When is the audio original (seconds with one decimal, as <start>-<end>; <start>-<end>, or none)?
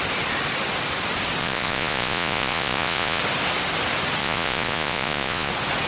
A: 0.0-1.4; 3.2-4.2; 5.5-5.9